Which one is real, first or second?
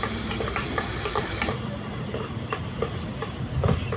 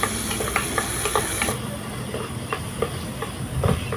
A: second